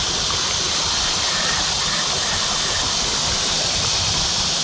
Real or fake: real